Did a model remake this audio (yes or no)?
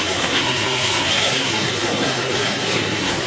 yes